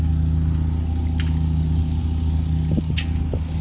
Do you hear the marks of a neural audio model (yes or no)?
no